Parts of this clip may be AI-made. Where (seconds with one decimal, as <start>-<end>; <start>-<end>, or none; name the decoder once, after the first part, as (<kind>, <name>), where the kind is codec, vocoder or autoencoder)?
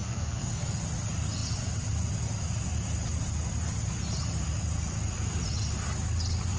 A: 0.0-0.8 (codec, SNAC)